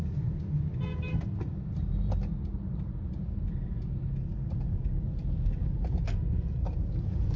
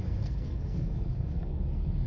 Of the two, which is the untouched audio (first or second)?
first